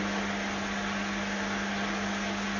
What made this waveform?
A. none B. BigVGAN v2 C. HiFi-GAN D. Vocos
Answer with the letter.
A